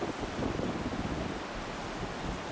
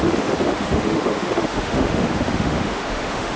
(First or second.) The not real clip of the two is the second